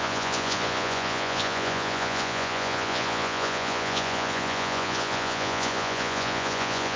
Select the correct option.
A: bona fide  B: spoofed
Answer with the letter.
B